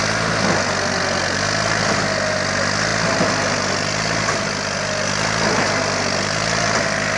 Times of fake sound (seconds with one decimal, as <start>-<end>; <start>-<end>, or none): none